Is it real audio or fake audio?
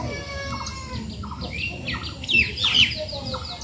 real